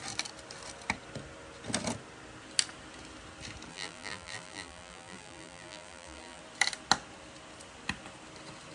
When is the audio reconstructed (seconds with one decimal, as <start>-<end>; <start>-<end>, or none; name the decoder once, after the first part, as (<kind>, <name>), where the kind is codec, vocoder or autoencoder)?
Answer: 3.7-6.4 (vocoder, BigVGAN v2)